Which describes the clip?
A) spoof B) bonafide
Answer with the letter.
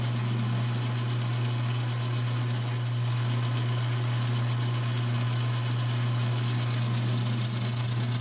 B